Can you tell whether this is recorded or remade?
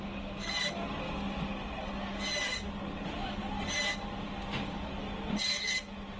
recorded